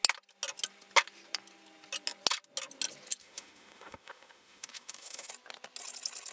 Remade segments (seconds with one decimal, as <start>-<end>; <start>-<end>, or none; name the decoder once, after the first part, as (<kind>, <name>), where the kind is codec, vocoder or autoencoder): 3.2-5.3 (autoencoder, DAC-VAE)